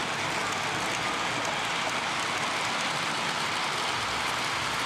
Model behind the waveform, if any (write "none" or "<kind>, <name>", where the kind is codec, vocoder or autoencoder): none